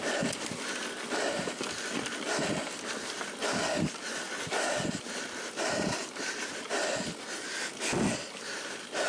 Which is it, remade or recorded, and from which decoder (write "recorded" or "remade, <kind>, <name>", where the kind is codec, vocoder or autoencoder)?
recorded